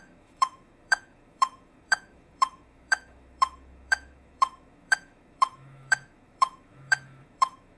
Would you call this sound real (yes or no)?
no